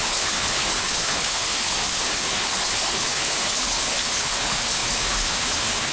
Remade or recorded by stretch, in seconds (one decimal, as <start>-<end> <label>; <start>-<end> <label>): 0.0-5.9 remade